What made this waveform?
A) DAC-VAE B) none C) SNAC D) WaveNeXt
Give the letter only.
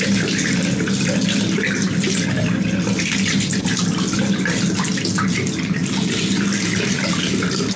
B